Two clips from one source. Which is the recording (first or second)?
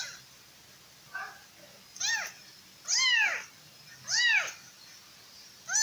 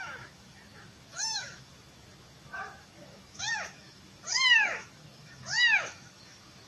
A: first